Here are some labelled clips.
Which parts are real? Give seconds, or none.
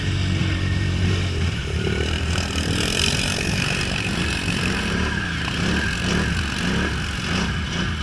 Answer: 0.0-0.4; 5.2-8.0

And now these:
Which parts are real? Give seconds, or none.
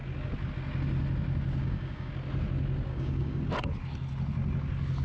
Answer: 0.0-1.6; 2.1-2.9; 3.4-5.0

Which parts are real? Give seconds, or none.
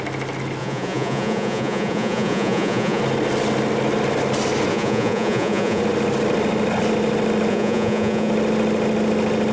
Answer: 0.0-0.6; 3.0-4.7; 5.8-7.5; 8.3-9.5